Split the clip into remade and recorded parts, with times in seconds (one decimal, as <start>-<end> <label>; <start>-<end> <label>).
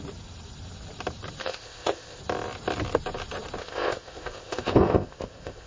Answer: 0.0-1.4 recorded; 1.4-2.2 remade; 2.2-3.6 recorded; 3.6-5.7 remade